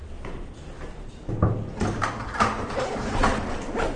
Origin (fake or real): real